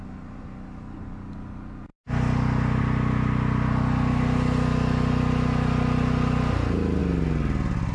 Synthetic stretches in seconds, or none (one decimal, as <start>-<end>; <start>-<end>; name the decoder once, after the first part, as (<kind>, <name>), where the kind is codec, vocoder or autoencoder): none